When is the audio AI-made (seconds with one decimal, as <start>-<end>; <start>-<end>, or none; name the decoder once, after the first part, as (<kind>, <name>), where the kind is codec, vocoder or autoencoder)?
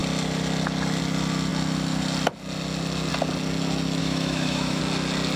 4.0-4.8 (autoencoder, DAC-VAE)